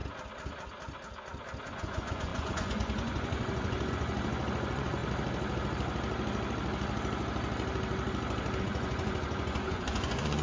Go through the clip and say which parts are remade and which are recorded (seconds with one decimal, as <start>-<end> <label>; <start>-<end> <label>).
0.0-1.7 recorded; 1.7-5.0 remade; 5.0-8.6 recorded; 8.6-10.4 remade